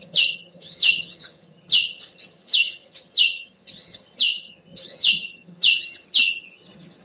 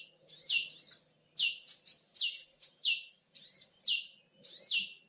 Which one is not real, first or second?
first